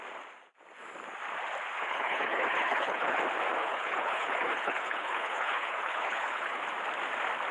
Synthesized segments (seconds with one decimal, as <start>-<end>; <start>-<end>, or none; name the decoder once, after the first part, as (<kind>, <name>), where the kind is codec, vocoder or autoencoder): 1.8-3.2 (codec, HILCodec); 3.6-6.6